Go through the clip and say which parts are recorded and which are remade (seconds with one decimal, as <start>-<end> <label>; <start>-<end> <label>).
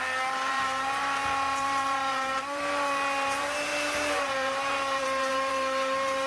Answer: 0.0-6.3 remade